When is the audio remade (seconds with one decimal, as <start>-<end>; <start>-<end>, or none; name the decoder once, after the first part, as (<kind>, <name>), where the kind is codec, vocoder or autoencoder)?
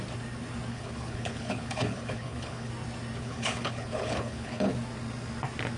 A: 0.7-2.7 (codec, HILCodec); 3.2-4.7